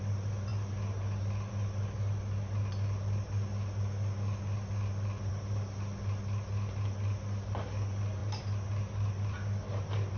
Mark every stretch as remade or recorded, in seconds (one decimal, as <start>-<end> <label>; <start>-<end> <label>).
0.0-10.2 recorded